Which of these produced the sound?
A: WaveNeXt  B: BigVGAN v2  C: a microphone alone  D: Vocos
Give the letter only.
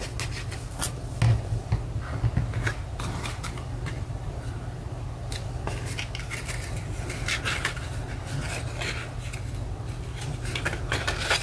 C